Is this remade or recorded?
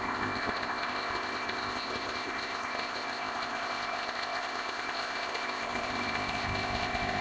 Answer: remade